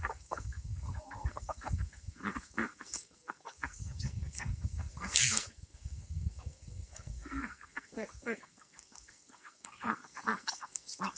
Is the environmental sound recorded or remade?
remade